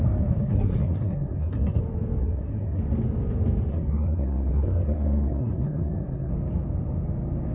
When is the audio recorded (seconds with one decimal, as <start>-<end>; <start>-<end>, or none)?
0.0-0.4; 1.8-2.2; 2.8-3.7; 6.3-7.5